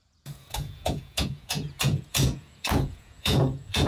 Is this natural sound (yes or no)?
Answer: no